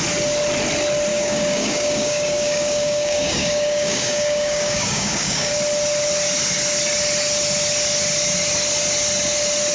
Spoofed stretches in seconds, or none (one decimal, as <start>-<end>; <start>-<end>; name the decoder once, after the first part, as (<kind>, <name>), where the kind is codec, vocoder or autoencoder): 1.1-5.5 (codec, DAC)